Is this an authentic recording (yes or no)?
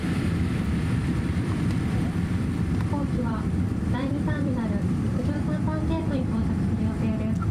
no